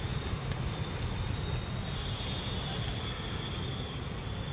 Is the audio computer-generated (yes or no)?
no